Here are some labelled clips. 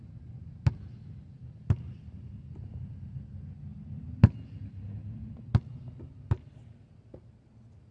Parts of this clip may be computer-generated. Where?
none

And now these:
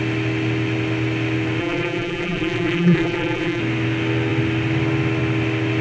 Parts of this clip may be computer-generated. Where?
1.6-3.6 (vocoder, BigVGAN v2)

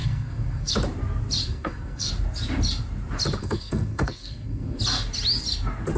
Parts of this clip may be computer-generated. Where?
0.0-0.7 (codec, SNAC); 1.4-2.1; 3.4-4.8

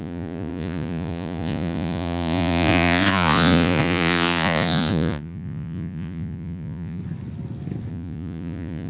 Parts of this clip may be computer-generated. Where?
0.0-7.0 (vocoder, Vocos); 7.9-8.9

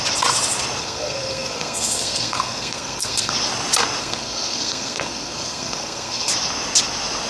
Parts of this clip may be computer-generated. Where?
0.8-3.3 (codec, SNAC); 4.0-6.3